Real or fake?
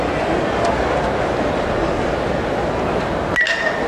real